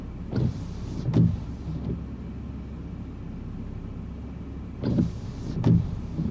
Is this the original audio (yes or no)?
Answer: yes